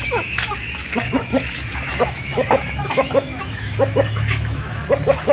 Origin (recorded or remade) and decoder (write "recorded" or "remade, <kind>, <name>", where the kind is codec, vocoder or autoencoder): remade, autoencoder, DAC-VAE